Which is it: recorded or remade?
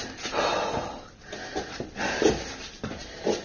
recorded